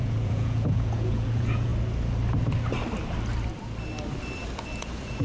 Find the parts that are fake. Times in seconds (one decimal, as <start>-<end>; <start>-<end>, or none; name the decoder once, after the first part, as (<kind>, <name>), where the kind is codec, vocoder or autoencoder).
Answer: 0.0-1.7 (vocoder, Vocos); 4.8-5.2